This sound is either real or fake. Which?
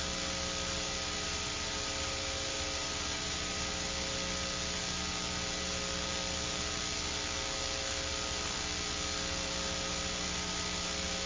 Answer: real